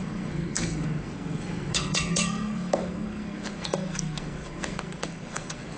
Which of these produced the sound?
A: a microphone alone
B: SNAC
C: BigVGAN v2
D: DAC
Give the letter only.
B